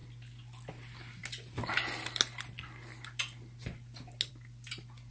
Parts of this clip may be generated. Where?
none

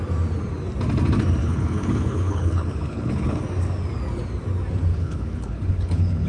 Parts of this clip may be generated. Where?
1.4-3.4 (codec, HILCodec); 4.9-6.3

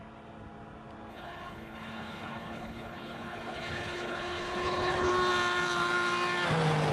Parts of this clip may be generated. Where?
1.1-5.1 (codec, HILCodec)